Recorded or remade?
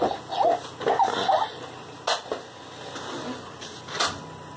recorded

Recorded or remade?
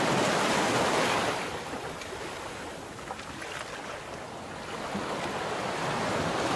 recorded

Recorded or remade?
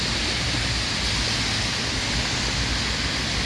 recorded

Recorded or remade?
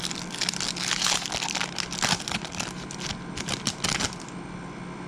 recorded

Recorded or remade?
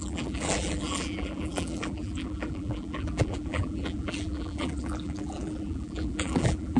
remade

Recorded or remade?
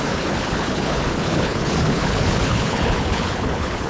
remade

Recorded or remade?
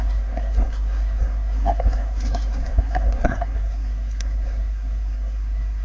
remade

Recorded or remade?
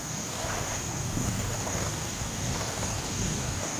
remade